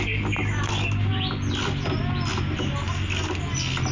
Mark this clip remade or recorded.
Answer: recorded